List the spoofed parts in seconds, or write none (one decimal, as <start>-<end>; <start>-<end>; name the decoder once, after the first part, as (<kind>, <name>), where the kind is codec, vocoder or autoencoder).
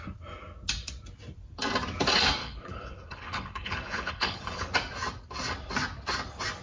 2.4-4.7 (codec, HILCodec)